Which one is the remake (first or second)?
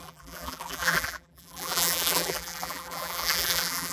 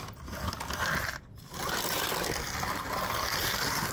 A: first